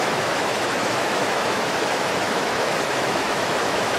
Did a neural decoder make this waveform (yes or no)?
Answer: yes